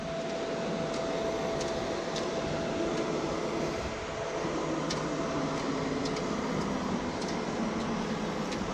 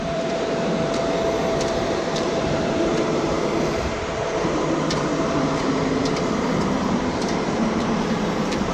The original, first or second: first